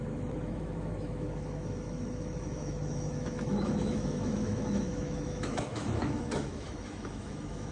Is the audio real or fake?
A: fake